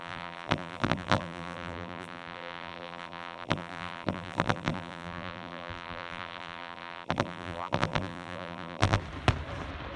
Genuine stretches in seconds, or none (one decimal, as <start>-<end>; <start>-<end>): 9.0-10.0